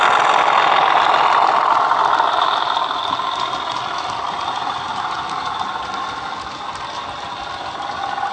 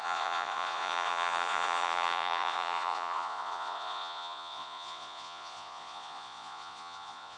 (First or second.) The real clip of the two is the first